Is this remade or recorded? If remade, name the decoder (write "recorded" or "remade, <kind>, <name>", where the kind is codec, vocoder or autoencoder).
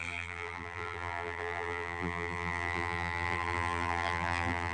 remade, vocoder, BigVGAN v2